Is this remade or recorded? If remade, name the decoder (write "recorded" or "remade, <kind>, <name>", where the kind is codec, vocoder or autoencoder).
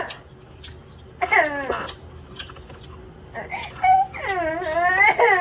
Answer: recorded